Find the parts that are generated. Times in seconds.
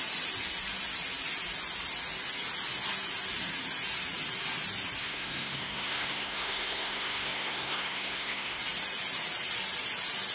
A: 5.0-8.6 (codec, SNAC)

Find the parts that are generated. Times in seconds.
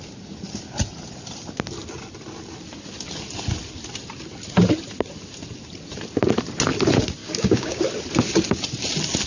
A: 7.2-7.8 (codec, DAC)